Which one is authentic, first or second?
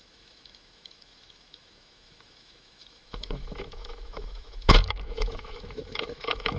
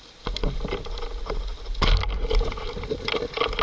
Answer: second